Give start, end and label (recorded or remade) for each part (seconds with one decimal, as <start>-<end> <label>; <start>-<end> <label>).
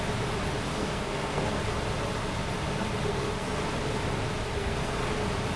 0.0-0.7 recorded; 0.7-1.6 remade; 1.6-3.1 recorded; 3.1-3.6 remade; 3.6-4.6 recorded; 4.6-5.1 remade; 5.1-5.6 recorded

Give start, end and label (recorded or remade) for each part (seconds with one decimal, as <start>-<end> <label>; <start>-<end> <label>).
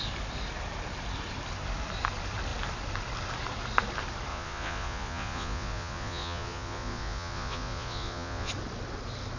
0.0-4.3 recorded; 4.3-8.5 remade; 8.5-9.4 recorded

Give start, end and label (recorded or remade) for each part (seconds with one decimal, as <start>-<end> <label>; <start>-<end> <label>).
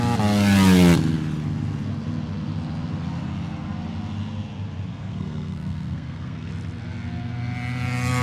0.0-4.9 recorded; 4.9-6.5 remade; 6.5-8.2 recorded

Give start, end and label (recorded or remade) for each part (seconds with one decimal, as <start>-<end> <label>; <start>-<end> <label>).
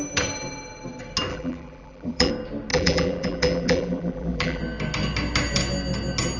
0.0-1.3 recorded; 1.3-2.3 remade; 2.3-2.7 recorded; 2.7-4.6 remade; 4.6-6.4 recorded